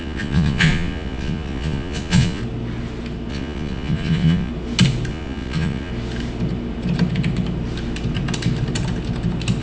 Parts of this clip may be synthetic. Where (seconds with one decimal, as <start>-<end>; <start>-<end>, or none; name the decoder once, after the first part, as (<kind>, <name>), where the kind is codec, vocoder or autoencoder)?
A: 0.0-2.4 (vocoder, Vocos); 3.3-4.5; 5.1-5.9